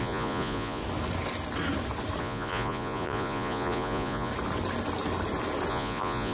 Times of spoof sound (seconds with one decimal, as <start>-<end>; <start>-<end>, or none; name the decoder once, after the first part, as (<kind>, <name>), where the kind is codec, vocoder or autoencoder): 0.0-0.8 (vocoder, Vocos); 2.2-4.3; 5.7-6.3